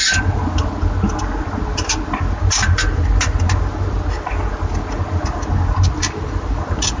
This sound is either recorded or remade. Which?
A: recorded